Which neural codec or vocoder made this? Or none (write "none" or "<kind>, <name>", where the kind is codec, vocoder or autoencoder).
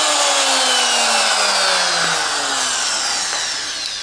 none